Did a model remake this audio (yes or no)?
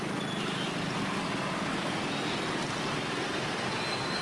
no